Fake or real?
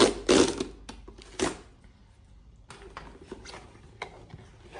real